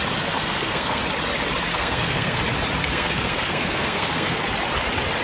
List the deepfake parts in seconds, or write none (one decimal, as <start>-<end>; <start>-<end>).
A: 0.4-1.0; 1.7-2.4; 2.8-4.4